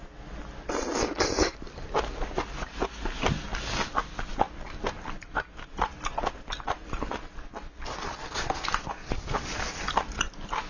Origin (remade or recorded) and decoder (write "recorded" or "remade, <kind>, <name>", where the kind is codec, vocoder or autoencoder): recorded